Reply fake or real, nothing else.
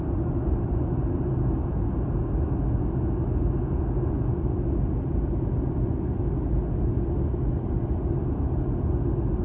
real